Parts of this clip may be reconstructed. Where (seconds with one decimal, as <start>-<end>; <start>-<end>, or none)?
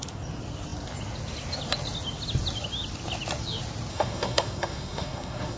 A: 3.9-5.6